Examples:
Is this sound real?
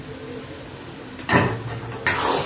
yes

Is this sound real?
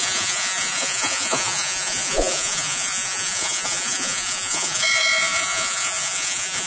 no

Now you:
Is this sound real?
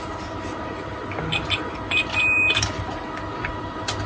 yes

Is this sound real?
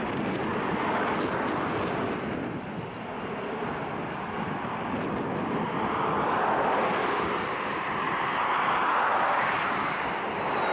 yes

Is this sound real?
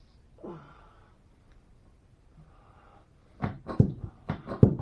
yes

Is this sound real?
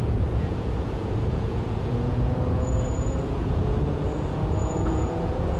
no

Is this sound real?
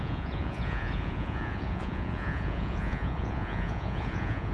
no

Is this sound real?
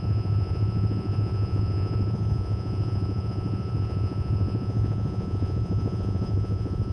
no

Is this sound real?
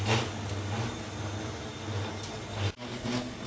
yes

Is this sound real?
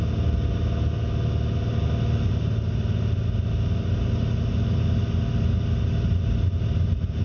yes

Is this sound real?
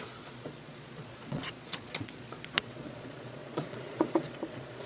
no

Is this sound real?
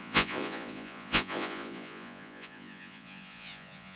no